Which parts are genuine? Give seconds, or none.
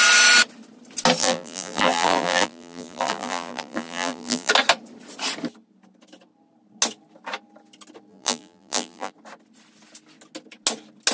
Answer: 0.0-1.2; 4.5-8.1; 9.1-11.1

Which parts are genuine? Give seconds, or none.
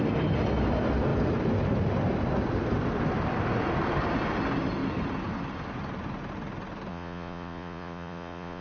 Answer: 0.0-6.9